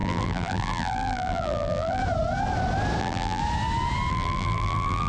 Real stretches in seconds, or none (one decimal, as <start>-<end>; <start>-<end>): 2.0-3.0; 3.4-4.1